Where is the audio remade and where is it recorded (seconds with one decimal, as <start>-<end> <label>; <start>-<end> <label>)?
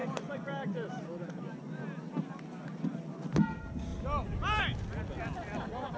0.0-1.0 remade; 1.0-6.0 recorded